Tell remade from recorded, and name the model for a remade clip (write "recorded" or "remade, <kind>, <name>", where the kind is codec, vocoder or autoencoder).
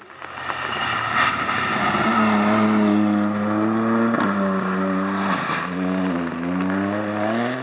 recorded